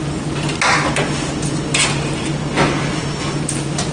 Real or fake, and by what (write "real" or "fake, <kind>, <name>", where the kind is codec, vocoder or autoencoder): real